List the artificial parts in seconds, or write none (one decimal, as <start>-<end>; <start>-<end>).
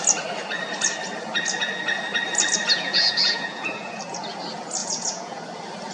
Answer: 2.7-4.0; 4.8-5.4